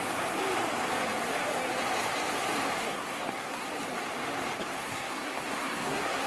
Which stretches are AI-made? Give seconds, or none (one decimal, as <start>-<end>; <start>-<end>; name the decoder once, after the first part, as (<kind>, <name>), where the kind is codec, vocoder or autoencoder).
2.8-3.7 (codec, SNAC); 4.8-6.3